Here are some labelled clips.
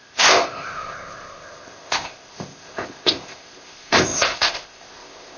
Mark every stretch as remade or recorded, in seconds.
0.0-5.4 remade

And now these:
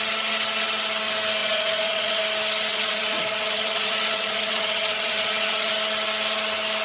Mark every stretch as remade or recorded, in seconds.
0.0-1.4 recorded; 1.4-2.2 remade; 2.2-2.7 recorded; 2.7-5.7 remade; 5.7-6.8 recorded